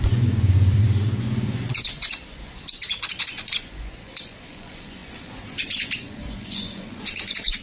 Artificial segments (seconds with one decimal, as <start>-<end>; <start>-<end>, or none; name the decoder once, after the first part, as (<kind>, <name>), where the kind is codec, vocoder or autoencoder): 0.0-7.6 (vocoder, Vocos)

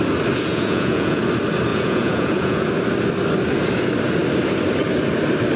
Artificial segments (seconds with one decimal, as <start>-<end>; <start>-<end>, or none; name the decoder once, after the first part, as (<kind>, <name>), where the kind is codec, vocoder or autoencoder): 0.5-1.2 (vocoder, Vocos); 1.7-2.7

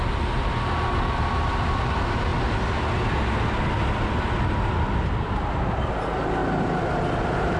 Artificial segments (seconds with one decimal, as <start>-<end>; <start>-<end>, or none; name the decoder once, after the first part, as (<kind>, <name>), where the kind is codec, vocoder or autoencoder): none

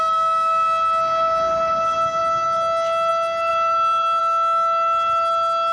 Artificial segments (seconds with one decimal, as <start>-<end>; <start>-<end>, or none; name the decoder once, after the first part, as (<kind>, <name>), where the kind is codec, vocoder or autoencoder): 3.5-4.2 (vocoder, BigVGAN v2)

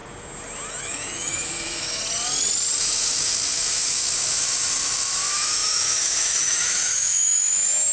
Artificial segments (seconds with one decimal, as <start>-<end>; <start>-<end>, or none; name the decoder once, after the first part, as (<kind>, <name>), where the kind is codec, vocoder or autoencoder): 0.8-2.0 (autoencoder, DAC-VAE); 2.8-7.9

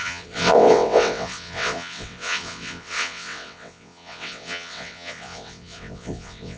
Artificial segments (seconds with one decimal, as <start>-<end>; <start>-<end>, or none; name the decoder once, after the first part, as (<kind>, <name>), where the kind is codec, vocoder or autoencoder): 0.0-6.6 (vocoder, WaveNeXt)